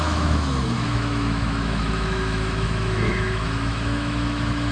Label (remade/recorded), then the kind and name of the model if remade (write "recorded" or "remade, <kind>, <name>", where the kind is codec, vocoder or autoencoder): remade, autoencoder, DAC-VAE